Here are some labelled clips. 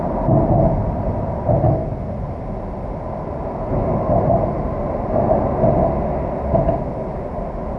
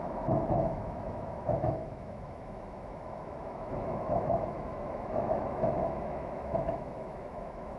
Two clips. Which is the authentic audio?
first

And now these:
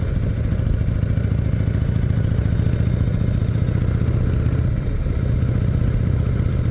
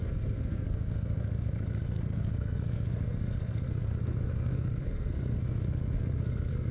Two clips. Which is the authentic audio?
first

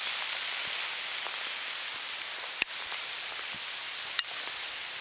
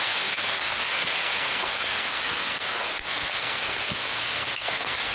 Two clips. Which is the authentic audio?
first